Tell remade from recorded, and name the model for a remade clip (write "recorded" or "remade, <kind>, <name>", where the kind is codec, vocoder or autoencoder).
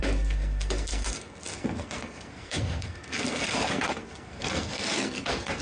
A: remade, codec, SNAC